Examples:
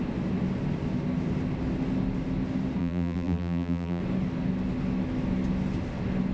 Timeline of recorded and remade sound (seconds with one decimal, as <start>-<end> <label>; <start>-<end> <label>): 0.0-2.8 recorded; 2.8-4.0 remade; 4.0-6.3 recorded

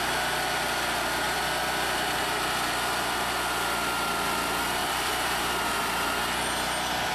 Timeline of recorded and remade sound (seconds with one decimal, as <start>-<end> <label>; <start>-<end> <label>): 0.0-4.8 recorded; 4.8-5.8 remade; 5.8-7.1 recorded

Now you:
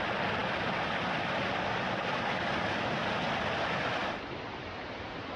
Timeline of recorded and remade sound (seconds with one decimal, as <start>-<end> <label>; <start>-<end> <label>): 0.0-0.4 recorded; 0.4-3.0 remade; 3.0-4.0 recorded; 4.0-4.6 remade; 4.6-5.4 recorded

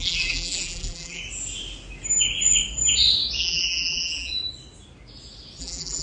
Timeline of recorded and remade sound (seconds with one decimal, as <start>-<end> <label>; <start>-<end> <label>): 0.0-1.2 remade; 1.2-3.4 recorded; 3.4-4.3 remade; 4.3-5.6 recorded; 5.6-6.0 remade

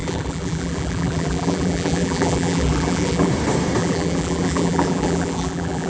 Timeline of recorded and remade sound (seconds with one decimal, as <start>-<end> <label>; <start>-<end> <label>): 0.0-3.3 remade; 3.3-3.8 recorded; 3.8-5.9 remade

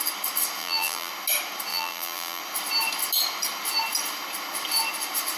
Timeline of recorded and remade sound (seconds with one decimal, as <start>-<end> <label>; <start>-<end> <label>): 0.0-0.6 recorded; 0.6-1.1 remade; 1.1-1.7 recorded; 1.7-2.4 remade; 2.4-5.4 recorded